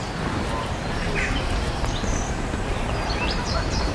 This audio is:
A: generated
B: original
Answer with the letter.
A